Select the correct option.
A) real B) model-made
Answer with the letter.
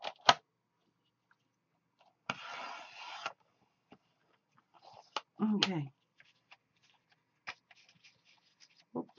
A